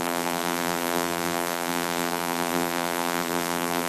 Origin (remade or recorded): remade